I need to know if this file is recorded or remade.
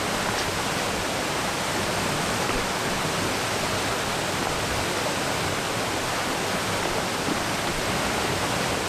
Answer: recorded